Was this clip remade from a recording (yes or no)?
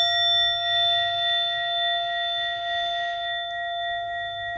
no